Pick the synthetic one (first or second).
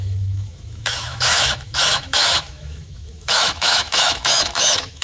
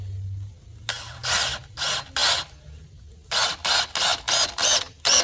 first